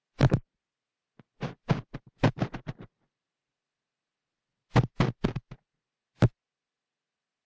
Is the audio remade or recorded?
recorded